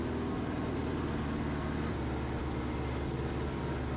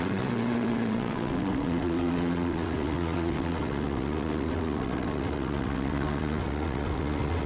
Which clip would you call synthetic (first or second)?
second